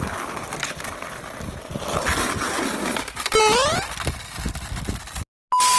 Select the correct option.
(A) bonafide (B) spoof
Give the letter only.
A